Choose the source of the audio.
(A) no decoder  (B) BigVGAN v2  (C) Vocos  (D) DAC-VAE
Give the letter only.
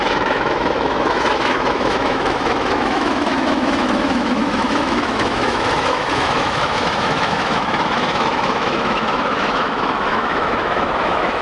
D